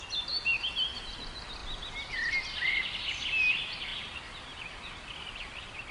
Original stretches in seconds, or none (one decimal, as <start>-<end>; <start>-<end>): 0.0-3.9